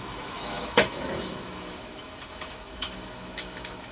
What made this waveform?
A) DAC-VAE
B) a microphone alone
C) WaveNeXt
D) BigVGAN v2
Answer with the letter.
A